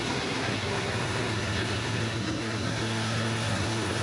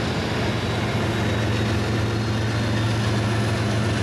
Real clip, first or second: second